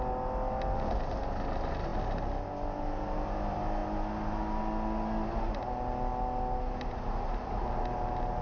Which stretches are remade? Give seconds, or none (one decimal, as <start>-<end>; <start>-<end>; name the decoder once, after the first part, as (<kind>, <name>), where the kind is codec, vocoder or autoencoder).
none